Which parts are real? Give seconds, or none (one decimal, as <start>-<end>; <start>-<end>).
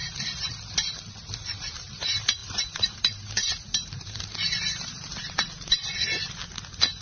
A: 0.0-2.4; 5.7-7.0